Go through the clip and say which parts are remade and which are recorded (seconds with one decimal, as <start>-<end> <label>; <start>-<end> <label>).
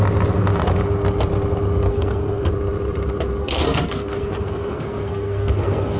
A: 0.0-1.9 recorded; 1.9-2.5 remade; 2.5-3.4 recorded; 3.4-6.0 remade